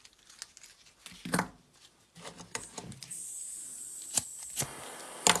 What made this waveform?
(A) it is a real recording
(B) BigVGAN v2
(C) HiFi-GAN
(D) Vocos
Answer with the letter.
A